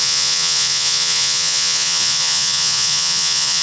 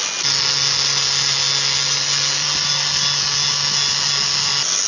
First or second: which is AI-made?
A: first